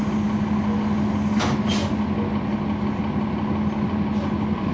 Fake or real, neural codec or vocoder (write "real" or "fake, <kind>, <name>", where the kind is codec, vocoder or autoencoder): real